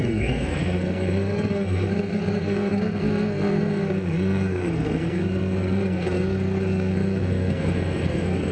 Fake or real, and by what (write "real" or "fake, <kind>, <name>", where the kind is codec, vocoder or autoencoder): fake, codec, SNAC